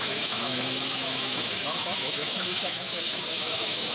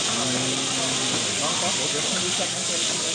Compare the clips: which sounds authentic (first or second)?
second